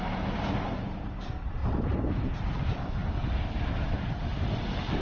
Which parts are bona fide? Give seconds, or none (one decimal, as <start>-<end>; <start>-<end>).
1.6-2.4